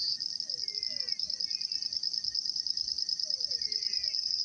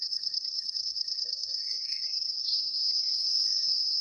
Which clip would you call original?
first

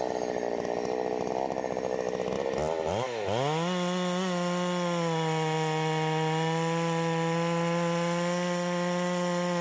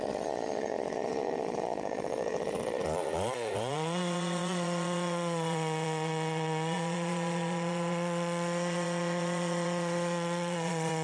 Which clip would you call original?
first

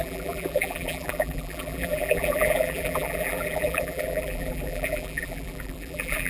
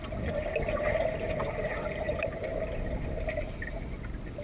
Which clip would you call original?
second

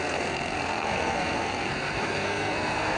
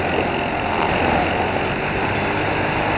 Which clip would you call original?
second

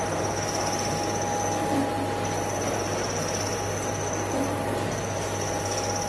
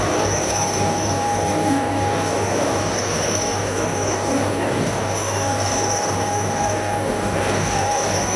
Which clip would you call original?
first